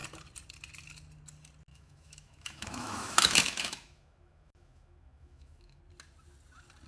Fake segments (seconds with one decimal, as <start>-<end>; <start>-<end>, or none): 1.7-5.8